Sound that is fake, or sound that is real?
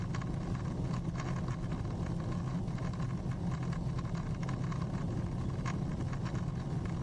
real